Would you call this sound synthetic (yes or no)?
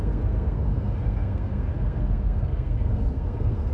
yes